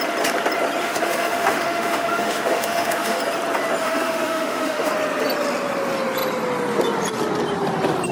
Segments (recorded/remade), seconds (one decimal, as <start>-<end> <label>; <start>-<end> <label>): 0.0-0.8 recorded; 0.8-3.2 remade; 3.2-3.8 recorded; 3.8-4.9 remade; 4.9-8.1 recorded